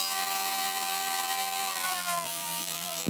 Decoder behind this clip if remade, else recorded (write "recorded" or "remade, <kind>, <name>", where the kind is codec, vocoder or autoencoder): remade, vocoder, BigVGAN v2